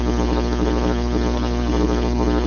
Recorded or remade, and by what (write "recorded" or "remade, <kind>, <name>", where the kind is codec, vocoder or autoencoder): remade, codec, SNAC